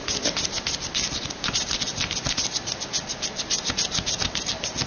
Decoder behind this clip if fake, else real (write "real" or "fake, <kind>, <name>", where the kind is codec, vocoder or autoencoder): real